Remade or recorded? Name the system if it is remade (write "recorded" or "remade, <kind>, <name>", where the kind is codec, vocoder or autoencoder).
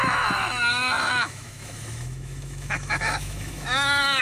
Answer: remade, autoencoder, DAC-VAE